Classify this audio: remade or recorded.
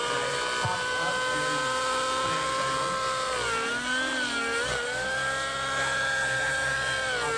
recorded